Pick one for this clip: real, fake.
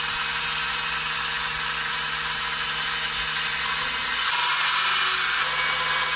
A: real